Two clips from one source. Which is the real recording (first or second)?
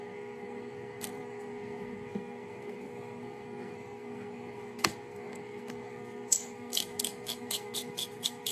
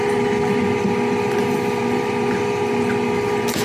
second